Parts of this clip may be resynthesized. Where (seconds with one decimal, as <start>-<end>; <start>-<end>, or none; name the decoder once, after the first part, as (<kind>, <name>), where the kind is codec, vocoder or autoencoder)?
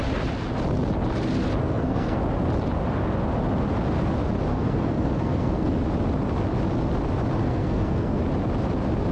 1.6-2.2 (codec, SNAC); 4.5-5.7; 7.4-8.2